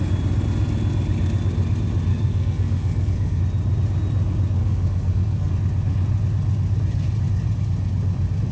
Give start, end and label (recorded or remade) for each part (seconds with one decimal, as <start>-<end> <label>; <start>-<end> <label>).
0.0-2.1 recorded; 2.1-3.4 remade; 3.4-4.6 recorded; 4.6-5.5 remade; 5.5-8.5 recorded